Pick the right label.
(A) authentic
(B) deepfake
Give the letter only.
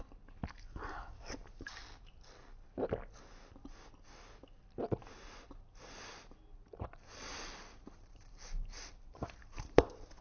A